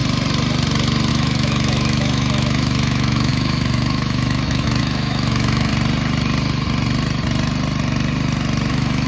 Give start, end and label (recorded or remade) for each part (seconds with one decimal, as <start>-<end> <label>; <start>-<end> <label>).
0.0-1.1 recorded; 1.1-5.7 remade; 5.7-8.7 recorded; 8.7-9.1 remade